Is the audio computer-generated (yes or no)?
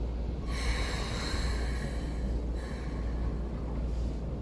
no